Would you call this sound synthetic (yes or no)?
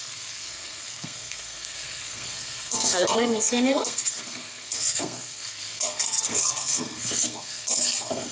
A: yes